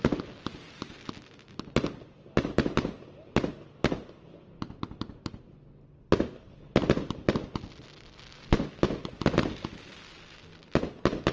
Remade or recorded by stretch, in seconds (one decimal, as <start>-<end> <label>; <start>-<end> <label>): 0.0-11.3 recorded